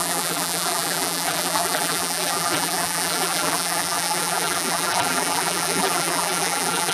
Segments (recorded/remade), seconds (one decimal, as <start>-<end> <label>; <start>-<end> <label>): 0.0-6.9 remade